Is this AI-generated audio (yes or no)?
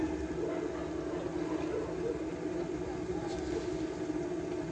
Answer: no